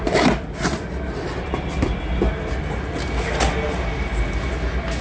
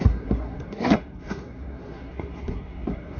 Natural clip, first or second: first